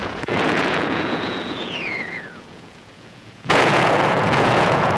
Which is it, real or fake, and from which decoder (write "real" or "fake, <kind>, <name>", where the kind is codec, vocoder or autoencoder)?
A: fake, vocoder, Vocos